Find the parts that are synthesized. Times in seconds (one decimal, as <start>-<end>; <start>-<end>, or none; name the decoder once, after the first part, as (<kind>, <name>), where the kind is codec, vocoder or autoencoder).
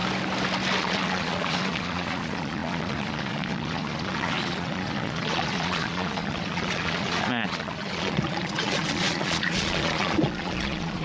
0.8-11.0 (vocoder, Vocos)